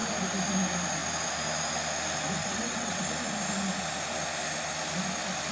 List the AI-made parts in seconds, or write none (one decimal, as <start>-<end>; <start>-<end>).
2.4-3.0

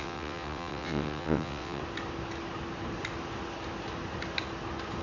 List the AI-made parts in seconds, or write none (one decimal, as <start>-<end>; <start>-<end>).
0.0-1.8

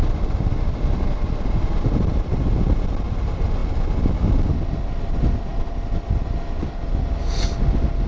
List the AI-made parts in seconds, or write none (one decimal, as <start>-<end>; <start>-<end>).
none

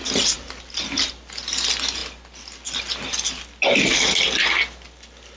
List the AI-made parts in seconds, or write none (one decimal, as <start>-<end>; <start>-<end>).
none